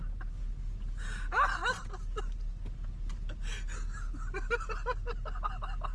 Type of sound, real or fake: real